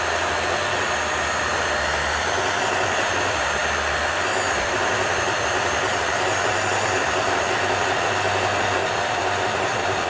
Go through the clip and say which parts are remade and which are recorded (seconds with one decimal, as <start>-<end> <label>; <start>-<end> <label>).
0.0-8.8 recorded; 8.8-10.1 remade